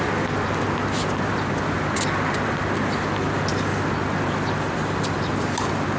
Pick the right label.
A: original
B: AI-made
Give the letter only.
A